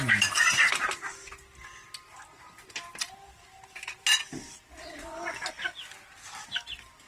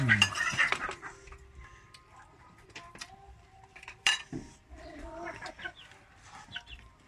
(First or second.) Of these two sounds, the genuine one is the first